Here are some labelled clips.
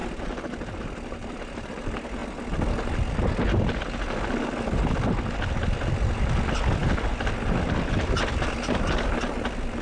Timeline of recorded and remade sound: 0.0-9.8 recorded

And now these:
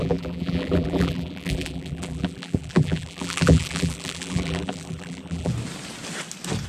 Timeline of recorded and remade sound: 0.0-5.5 remade; 5.5-6.7 recorded

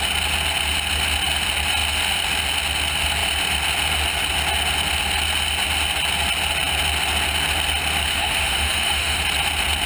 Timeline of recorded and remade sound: 0.0-8.1 recorded; 8.1-9.2 remade; 9.2-9.9 recorded

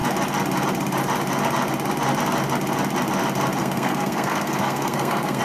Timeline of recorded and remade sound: 0.0-3.6 recorded; 3.6-5.4 remade

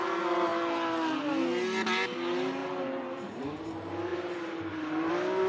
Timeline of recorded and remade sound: 0.0-2.6 recorded; 2.6-3.4 remade; 3.4-4.1 recorded; 4.1-5.1 remade; 5.1-5.5 recorded

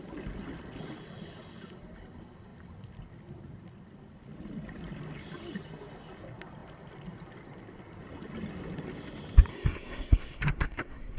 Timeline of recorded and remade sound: 0.0-9.5 recorded; 9.5-11.2 remade

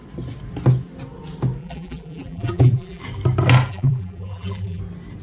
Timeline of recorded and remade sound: 0.0-1.6 recorded; 1.6-3.0 remade; 3.0-3.7 recorded; 3.7-4.8 remade; 4.8-5.2 recorded

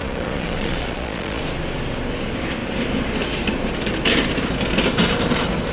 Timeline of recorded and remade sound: 0.0-1.4 remade; 1.4-5.7 recorded